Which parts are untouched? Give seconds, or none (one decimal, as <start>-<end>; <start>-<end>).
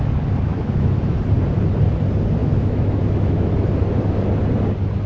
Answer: 0.0-0.5; 1.2-2.4; 3.5-5.1